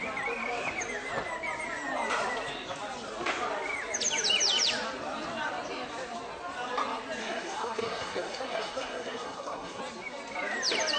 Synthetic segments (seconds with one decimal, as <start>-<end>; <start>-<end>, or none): 7.2-9.8

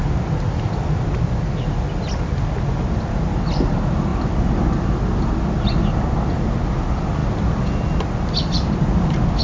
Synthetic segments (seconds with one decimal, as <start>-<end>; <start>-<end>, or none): none

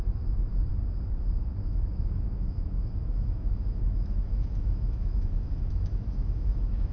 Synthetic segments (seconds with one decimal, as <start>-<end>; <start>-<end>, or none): 0.0-0.7; 1.6-6.9

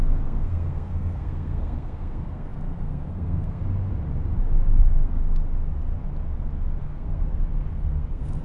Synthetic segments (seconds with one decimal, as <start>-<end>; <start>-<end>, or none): 0.0-3.6; 4.8-5.2; 6.8-8.4

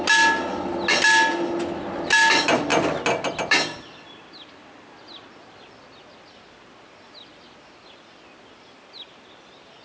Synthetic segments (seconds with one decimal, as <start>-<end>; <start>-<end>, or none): none

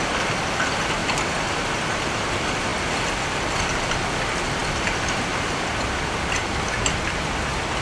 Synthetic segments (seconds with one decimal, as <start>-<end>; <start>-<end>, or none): none

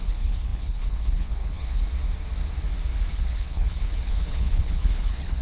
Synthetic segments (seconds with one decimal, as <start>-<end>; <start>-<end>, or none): 0.0-1.8; 3.1-5.4